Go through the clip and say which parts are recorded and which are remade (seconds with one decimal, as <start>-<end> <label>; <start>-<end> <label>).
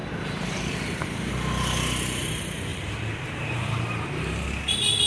0.0-1.3 remade; 1.3-2.7 recorded; 2.7-4.6 remade; 4.6-5.1 recorded